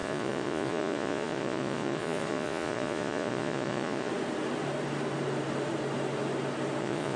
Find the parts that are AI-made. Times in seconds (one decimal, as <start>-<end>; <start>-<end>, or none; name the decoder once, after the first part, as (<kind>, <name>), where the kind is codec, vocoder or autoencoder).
0.0-4.1 (vocoder, Vocos); 6.8-7.2